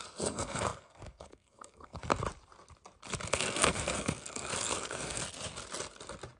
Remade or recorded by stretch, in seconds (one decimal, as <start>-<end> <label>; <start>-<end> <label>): 0.0-2.1 remade; 2.1-3.3 recorded; 3.3-5.2 remade; 5.2-6.4 recorded

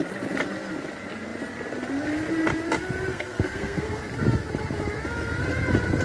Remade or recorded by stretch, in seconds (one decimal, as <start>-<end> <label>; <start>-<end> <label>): 0.0-3.1 recorded; 3.1-4.0 remade; 4.0-6.0 recorded

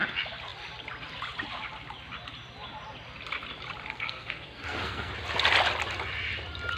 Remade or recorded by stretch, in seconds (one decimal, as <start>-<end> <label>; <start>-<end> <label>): 0.0-3.9 recorded; 3.9-5.1 remade; 5.1-6.8 recorded

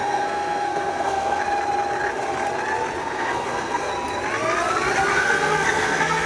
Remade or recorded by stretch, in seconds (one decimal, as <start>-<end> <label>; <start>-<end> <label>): 0.0-1.4 remade; 1.4-3.0 recorded; 3.0-3.9 remade; 3.9-5.1 recorded; 5.1-6.3 remade

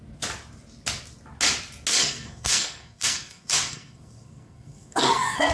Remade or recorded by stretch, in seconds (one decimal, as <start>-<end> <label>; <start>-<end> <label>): 0.0-1.9 recorded; 1.9-5.5 remade

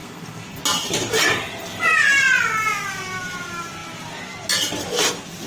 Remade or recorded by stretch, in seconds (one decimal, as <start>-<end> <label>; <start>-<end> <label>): 0.0-0.6 remade; 0.6-5.5 recorded